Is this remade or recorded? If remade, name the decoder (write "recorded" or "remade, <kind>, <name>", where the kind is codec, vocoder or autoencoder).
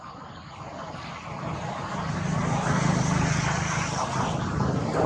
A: recorded